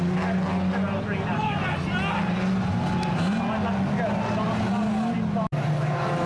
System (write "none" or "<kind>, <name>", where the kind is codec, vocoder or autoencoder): none